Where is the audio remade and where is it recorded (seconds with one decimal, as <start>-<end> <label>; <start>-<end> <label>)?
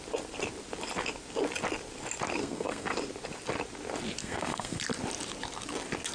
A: 0.0-2.4 recorded; 2.4-2.9 remade; 2.9-4.2 recorded; 4.2-4.8 remade; 4.8-6.1 recorded